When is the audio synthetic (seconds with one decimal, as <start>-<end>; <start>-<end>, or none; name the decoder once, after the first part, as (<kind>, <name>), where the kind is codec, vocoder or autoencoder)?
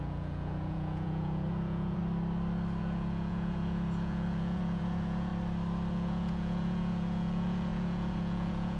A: 0.0-2.0 (vocoder, Vocos); 2.8-5.3; 5.9-8.8